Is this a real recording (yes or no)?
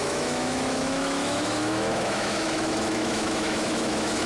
no